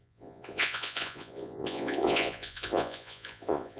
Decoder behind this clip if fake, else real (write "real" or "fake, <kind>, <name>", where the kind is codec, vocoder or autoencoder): fake, vocoder, Vocos